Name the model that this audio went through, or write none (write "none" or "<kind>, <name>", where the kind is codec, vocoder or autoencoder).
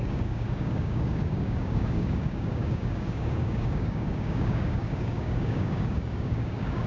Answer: codec, DAC